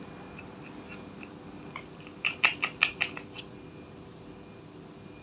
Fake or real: real